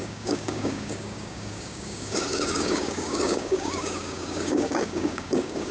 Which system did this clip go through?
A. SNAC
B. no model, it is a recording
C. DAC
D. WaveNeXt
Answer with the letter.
C